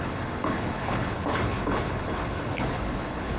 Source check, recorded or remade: remade